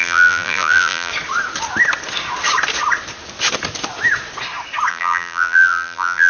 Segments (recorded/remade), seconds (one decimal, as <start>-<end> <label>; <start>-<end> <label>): 0.0-1.1 remade; 1.1-4.9 recorded; 4.9-6.3 remade